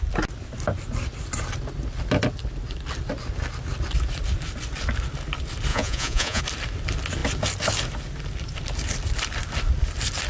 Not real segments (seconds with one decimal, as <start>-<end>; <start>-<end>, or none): 5.7-6.4